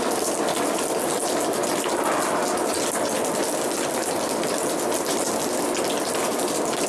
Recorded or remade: recorded